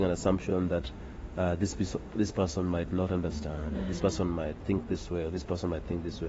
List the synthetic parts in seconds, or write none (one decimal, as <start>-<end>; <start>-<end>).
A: 0.5-4.0; 5.0-5.8